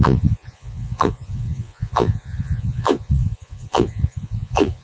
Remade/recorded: remade